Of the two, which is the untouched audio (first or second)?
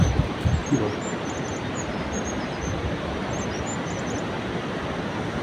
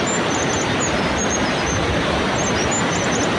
second